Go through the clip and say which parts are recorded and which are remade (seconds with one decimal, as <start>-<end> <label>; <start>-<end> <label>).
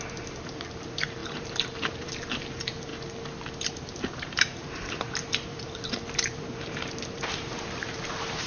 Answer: 0.0-2.9 remade; 2.9-3.7 recorded; 3.7-8.5 remade